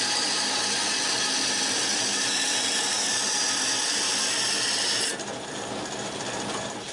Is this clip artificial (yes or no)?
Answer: no